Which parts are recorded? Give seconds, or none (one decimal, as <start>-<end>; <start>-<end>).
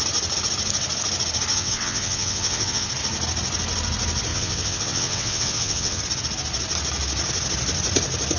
0.0-1.5; 2.9-4.3; 6.0-8.4